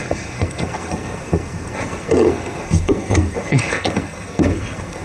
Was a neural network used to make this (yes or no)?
yes